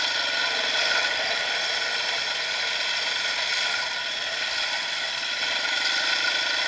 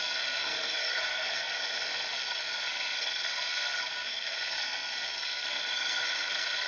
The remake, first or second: second